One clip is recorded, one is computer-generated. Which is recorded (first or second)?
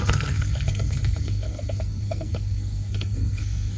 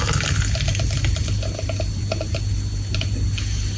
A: second